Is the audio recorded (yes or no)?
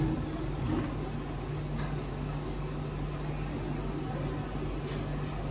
yes